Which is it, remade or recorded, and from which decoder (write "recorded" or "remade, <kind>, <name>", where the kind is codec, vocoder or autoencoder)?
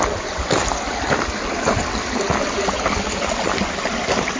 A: recorded